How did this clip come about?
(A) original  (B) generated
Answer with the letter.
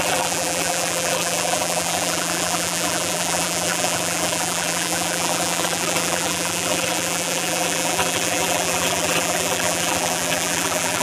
B